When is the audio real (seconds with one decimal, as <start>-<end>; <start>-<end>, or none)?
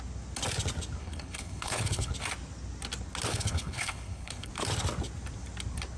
0.0-1.0; 2.1-3.3; 4.5-6.0